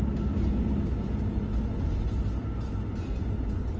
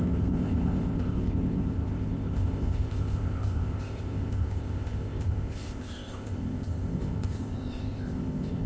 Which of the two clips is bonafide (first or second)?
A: first